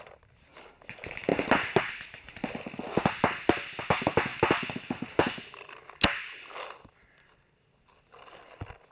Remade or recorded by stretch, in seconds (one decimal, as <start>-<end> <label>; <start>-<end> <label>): 0.0-8.9 recorded